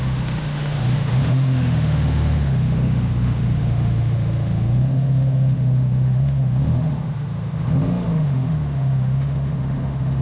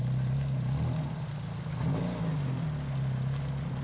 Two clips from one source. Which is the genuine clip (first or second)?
second